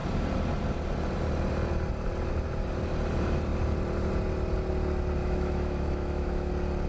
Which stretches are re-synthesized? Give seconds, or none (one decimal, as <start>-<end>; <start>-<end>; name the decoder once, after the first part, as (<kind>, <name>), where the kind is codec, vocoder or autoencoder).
5.2-6.5 (autoencoder, DAC-VAE)

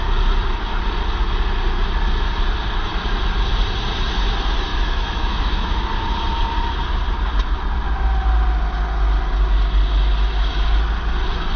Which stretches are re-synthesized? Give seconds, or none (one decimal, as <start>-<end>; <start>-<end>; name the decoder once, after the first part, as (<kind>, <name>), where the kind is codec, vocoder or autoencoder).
4.7-5.8 (autoencoder, DAC-VAE)

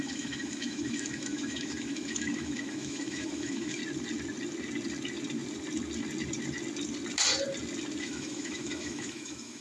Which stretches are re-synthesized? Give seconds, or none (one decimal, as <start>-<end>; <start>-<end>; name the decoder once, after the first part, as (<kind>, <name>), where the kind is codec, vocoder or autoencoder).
0.0-3.8 (autoencoder, DAC-VAE); 8.0-9.6

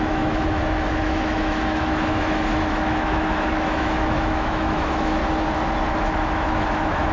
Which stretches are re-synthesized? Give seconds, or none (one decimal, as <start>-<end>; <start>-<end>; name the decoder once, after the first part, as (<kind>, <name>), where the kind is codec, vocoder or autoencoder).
0.0-5.2 (autoencoder, DAC-VAE); 6.2-7.1

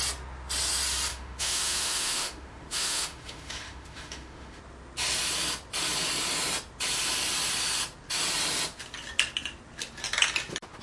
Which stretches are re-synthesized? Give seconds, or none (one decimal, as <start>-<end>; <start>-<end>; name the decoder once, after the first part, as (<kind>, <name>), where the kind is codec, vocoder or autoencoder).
1.1-4.6 (autoencoder, DAC-VAE)

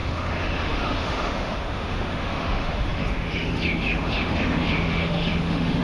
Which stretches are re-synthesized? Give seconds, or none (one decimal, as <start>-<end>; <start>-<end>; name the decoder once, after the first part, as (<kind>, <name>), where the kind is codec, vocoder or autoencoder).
0.0-5.8 (autoencoder, DAC-VAE)

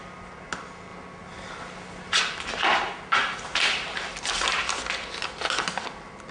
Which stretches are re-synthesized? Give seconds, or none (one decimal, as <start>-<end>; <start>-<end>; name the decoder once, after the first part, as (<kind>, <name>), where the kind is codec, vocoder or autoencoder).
none

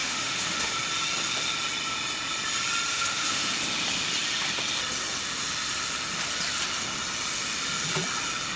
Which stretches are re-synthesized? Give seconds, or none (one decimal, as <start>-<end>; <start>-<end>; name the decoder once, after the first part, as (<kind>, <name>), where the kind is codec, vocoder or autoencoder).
0.0-0.7 (autoencoder, DAC-VAE); 2.9-3.5